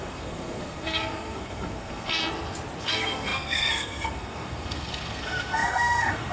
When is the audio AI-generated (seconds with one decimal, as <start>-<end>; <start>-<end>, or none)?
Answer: 0.0-2.2; 2.8-6.3